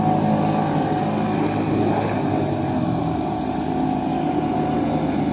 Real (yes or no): yes